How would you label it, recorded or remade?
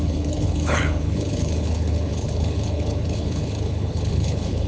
remade